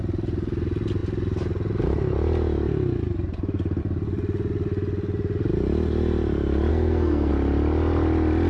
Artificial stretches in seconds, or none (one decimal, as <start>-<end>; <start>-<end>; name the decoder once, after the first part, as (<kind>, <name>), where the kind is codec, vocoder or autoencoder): 6.7-7.3 (codec, SNAC)